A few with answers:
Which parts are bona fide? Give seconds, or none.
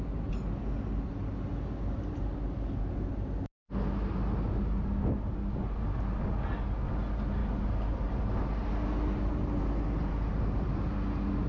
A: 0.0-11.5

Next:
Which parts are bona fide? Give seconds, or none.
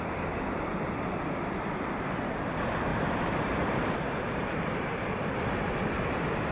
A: 0.0-2.9; 5.1-6.5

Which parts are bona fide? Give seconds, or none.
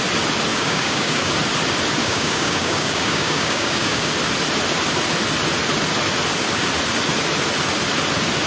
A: 0.0-0.5; 1.3-2.0; 4.1-8.5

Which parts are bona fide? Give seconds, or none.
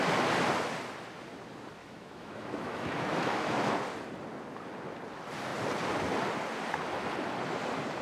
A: 0.0-1.8; 3.8-8.0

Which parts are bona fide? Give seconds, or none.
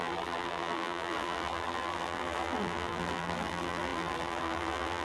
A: none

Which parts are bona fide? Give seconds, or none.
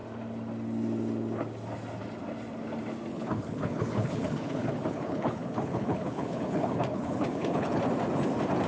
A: 0.0-3.1; 7.8-8.7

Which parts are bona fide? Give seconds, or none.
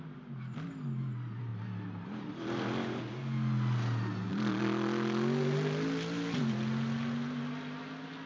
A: 0.0-8.3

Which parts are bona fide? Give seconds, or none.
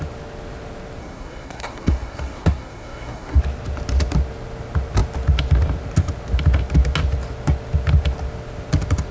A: 0.0-1.0; 3.4-9.1